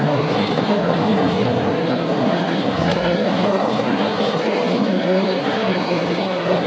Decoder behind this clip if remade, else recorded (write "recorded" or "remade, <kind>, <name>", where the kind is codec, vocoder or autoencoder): remade, codec, SNAC